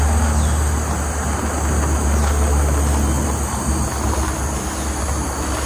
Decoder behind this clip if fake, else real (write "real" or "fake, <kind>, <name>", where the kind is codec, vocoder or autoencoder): real